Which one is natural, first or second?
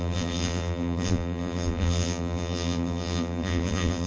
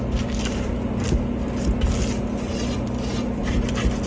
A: second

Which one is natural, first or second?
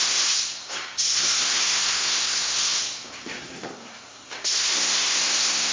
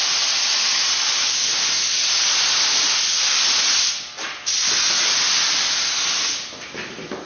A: second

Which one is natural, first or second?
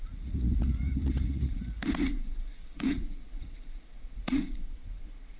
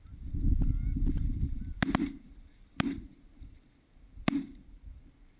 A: second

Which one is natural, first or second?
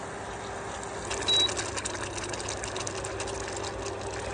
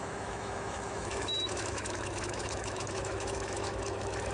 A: first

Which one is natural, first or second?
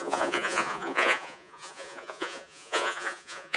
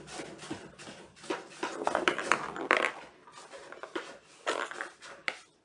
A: second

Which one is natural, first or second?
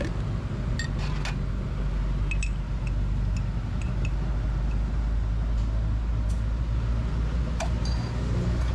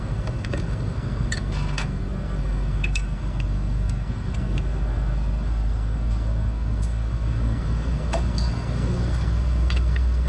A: first